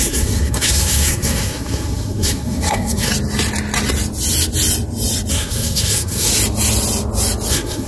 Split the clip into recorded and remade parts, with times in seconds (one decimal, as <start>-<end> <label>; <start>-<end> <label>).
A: 0.0-3.1 remade; 3.1-5.3 recorded; 5.3-6.3 remade; 6.3-7.5 recorded; 7.5-7.9 remade